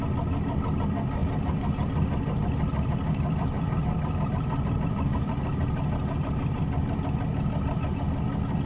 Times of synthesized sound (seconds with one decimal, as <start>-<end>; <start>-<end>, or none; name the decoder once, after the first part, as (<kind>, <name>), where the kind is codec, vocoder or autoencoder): none